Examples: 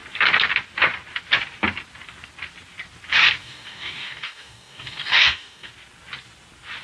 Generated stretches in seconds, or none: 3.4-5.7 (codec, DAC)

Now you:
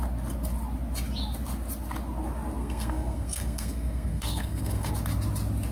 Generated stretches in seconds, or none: 2.6-4.9 (codec, SNAC)

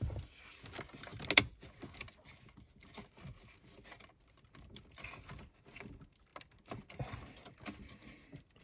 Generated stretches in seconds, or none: none

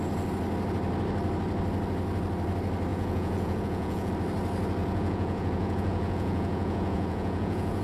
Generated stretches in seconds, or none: 2.9-4.1 (vocoder, Vocos); 4.8-7.8

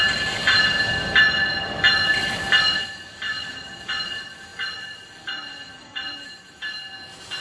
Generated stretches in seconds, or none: none

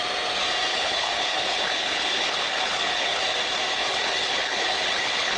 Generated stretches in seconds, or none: 0.7-3.2 (codec, HILCodec); 3.8-5.4

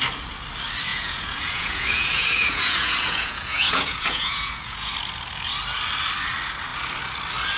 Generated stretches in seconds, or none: 0.9-4.9 (vocoder, Vocos)

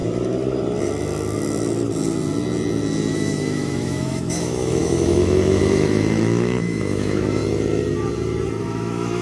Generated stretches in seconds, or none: 3.1-7.4 (autoencoder, DAC-VAE); 8.6-9.2